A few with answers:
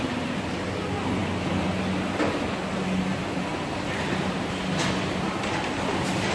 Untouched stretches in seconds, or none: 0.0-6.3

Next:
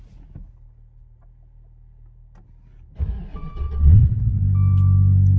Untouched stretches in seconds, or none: 0.0-3.3; 4.2-5.4

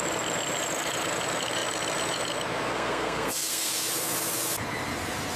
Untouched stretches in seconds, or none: 0.0-2.7; 3.7-5.4

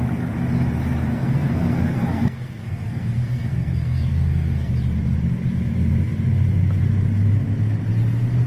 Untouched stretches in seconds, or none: 0.0-1.1; 4.7-8.5